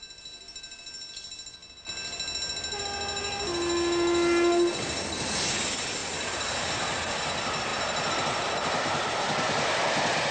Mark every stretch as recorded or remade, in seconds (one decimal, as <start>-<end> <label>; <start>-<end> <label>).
0.0-10.3 recorded